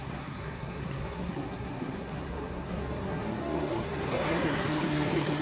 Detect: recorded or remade remade